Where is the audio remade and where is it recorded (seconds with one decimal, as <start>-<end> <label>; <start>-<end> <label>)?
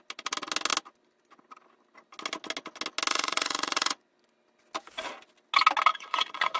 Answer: 0.0-3.1 recorded; 3.1-4.2 remade; 4.2-5.9 recorded; 5.9-6.6 remade